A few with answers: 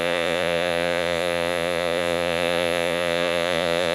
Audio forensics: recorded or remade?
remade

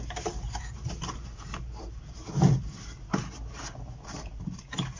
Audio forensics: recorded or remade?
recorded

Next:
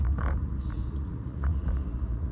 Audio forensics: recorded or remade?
remade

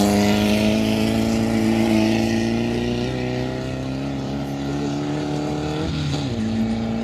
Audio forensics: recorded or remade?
recorded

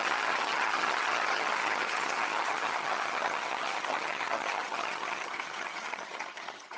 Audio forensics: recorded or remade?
remade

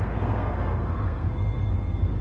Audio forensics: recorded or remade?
remade